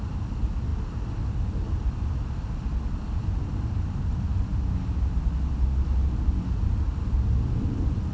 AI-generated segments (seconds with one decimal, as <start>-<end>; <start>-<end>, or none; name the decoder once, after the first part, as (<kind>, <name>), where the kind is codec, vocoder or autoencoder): none